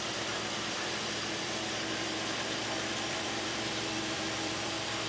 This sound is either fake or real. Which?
fake